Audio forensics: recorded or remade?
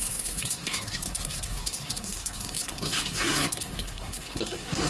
remade